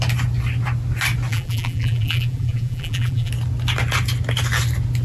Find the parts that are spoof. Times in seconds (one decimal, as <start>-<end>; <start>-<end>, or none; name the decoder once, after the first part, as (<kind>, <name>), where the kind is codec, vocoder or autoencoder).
1.3-3.3 (vocoder, BigVGAN v2)